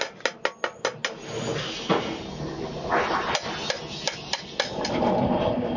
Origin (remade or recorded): recorded